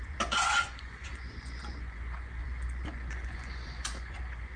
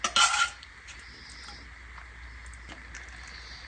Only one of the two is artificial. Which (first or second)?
first